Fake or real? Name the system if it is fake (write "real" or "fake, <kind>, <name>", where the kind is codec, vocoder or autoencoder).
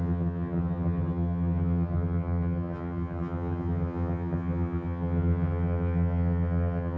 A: fake, vocoder, HiFi-GAN